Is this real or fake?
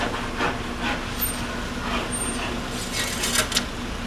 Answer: real